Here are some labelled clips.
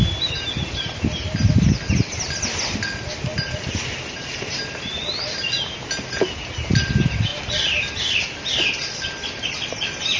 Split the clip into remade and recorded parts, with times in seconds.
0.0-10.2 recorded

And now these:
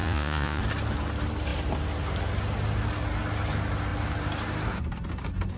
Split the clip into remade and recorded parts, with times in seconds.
0.0-0.6 remade; 0.6-5.6 recorded

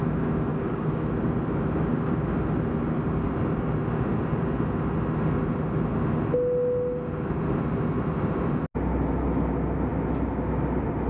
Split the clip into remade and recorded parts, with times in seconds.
0.0-0.5 recorded; 0.5-1.1 remade; 1.1-11.1 recorded

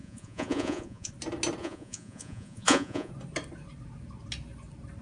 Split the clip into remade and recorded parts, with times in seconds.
0.0-1.1 remade; 1.1-1.6 recorded; 1.6-3.1 remade; 3.1-5.0 recorded

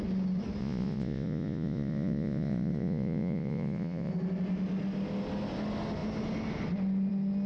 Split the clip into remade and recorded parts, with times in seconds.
0.0-0.6 recorded; 0.6-4.1 remade; 4.1-7.5 recorded

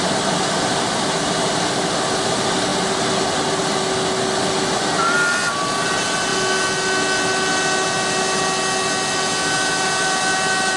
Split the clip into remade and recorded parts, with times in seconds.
0.0-10.8 recorded

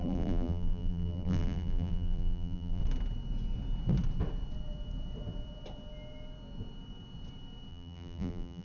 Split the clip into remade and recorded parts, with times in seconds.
0.0-2.8 remade; 2.8-7.7 recorded; 7.7-8.6 remade

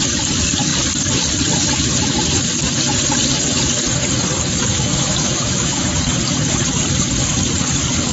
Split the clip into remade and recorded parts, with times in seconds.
0.0-4.7 recorded; 4.7-5.9 remade; 5.9-8.1 recorded